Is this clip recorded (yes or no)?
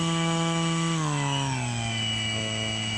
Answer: no